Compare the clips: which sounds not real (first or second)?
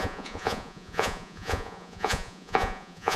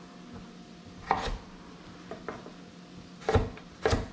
first